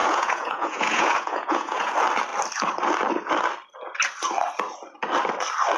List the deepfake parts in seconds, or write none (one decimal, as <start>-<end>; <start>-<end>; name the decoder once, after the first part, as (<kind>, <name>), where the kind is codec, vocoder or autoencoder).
0.0-1.9 (vocoder, Vocos)

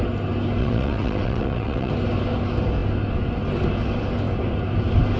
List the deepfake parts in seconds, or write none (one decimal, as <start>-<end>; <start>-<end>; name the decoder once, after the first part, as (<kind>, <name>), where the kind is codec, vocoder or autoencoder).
0.6-1.9 (vocoder, WaveNeXt)

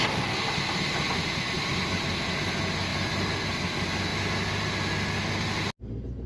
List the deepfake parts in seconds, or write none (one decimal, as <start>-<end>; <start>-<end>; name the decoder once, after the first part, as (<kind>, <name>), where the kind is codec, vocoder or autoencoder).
none

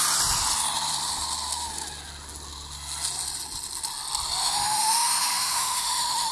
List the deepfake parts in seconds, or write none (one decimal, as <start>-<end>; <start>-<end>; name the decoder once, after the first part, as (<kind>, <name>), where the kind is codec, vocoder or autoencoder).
4.4-6.3 (autoencoder, DAC-VAE)